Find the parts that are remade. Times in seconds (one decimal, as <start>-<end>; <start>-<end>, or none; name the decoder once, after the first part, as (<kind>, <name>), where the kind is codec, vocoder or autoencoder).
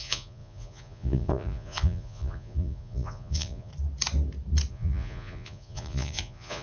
0.0-3.7 (vocoder, Vocos); 4.7-6.6